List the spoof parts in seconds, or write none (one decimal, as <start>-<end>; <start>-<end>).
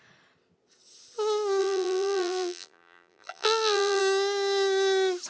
1.6-4.0